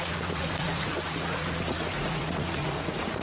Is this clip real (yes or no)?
no